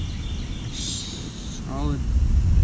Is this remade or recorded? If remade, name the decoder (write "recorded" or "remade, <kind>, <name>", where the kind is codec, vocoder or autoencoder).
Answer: recorded